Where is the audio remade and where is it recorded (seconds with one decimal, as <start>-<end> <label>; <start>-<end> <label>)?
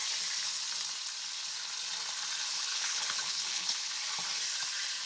0.0-2.5 recorded; 2.5-3.9 remade; 3.9-5.1 recorded